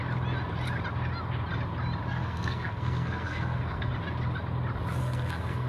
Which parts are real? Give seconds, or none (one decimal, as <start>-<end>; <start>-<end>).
0.0-2.1; 3.9-5.0